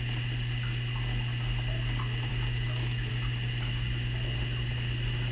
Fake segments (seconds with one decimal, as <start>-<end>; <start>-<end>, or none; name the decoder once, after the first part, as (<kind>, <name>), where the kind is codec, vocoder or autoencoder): 2.3-3.1 (autoencoder, DAC-VAE)

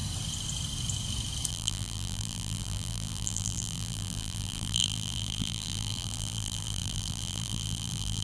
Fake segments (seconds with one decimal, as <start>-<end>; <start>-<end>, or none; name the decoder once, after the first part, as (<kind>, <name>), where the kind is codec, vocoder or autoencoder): 1.5-8.2 (vocoder, BigVGAN v2)

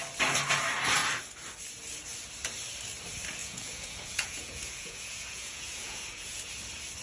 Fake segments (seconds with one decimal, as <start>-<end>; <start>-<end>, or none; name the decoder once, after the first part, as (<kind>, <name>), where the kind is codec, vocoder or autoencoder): 3.4-6.4 (vocoder, Vocos)

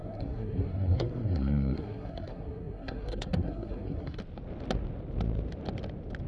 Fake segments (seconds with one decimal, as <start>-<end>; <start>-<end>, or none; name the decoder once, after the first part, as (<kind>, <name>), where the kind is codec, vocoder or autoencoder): 0.0-4.2 (codec, SNAC)

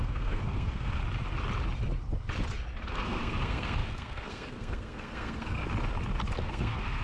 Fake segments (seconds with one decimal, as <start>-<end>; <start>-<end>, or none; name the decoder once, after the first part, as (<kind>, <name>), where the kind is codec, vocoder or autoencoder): 0.0-1.0 (codec, SNAC); 2.9-5.6; 6.4-7.0

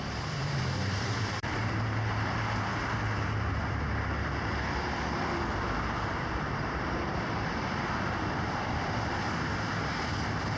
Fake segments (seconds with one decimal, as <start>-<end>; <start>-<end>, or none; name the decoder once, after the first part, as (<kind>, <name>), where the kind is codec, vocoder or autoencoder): 0.0-2.7 (vocoder, BigVGAN v2); 5.8-10.6

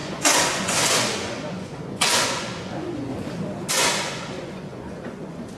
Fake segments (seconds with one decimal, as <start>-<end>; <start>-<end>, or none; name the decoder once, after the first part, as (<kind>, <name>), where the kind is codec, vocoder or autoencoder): 0.0-3.1 (vocoder, Vocos); 3.7-5.6

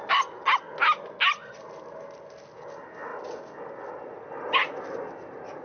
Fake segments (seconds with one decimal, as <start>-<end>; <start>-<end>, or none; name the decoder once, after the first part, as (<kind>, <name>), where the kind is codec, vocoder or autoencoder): none